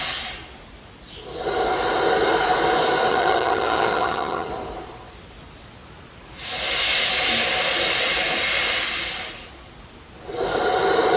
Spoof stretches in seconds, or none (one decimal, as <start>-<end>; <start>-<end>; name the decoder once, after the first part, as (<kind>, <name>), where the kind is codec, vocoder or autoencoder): 3.1-4.5 (vocoder, HiFi-GAN)